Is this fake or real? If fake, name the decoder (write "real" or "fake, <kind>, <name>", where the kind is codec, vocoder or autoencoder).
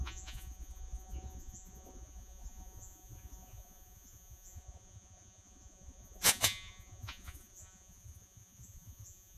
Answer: fake, vocoder, Vocos